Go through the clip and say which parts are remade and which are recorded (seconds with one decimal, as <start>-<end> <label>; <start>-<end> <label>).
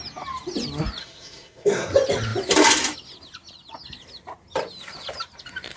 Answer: 0.0-1.0 recorded; 1.0-1.9 remade; 1.9-5.8 recorded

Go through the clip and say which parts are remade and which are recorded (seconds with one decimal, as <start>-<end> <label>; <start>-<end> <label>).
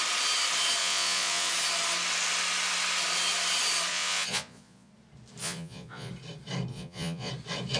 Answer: 0.0-0.8 recorded; 0.8-1.5 remade; 1.5-3.9 recorded; 3.9-4.9 remade; 4.9-5.4 recorded; 5.4-6.1 remade; 6.1-6.7 recorded; 6.7-7.3 remade; 7.3-7.8 recorded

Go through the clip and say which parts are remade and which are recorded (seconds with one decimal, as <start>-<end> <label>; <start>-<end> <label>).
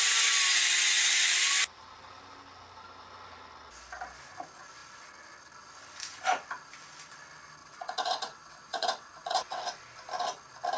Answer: 0.0-7.6 recorded; 7.6-9.6 remade; 9.6-10.8 recorded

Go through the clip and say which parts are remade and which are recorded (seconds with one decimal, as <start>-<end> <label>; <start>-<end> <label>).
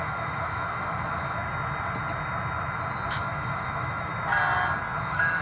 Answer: 0.0-1.4 remade; 1.4-3.1 recorded; 3.1-4.1 remade; 4.1-5.0 recorded; 5.0-5.4 remade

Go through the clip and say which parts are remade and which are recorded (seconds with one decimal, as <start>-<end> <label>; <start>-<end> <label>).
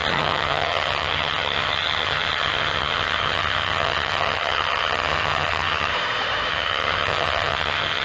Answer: 0.0-5.9 remade; 5.9-6.5 recorded; 6.5-8.0 remade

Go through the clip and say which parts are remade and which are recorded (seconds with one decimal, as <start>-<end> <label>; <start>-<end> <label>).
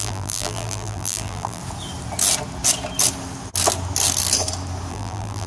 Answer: 0.0-1.6 remade; 1.6-4.9 recorded; 4.9-5.5 remade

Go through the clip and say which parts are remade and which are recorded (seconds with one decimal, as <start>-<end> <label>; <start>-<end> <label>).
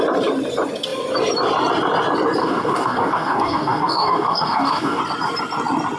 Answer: 0.0-2.4 recorded; 2.4-5.0 remade; 5.0-6.0 recorded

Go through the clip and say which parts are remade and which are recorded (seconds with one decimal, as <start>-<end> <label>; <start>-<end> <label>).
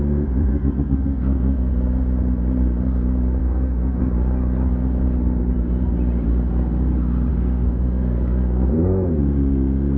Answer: 0.0-0.5 recorded; 0.5-1.7 remade; 1.7-3.4 recorded; 3.4-4.0 remade; 4.0-7.3 recorded; 7.3-9.2 remade; 9.2-10.0 recorded